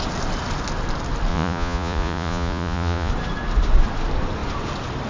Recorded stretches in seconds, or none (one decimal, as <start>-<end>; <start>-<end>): 0.0-1.3; 3.1-5.1